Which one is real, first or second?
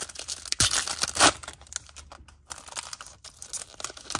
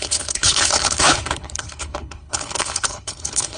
first